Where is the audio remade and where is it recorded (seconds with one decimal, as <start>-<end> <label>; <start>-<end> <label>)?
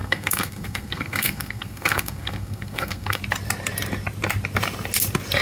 0.0-3.2 remade; 3.2-5.4 recorded